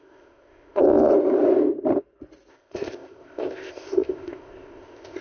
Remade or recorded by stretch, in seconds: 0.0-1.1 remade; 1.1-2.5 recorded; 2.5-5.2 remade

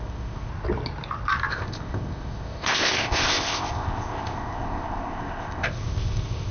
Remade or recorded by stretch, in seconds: 0.0-0.5 remade; 0.5-1.5 recorded; 1.5-6.5 remade

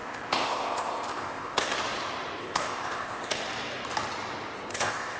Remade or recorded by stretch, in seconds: 0.0-1.7 remade; 1.7-2.4 recorded; 2.4-3.4 remade; 3.4-4.7 recorded; 4.7-5.2 remade

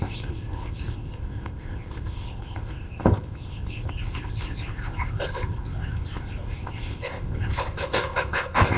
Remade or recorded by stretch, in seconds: 0.0-8.8 remade

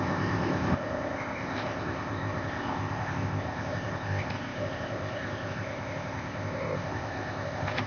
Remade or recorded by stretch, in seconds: 0.0-7.9 remade